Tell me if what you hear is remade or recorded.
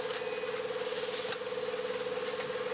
recorded